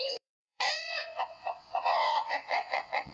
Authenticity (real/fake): fake